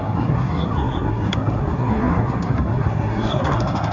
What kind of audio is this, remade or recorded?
remade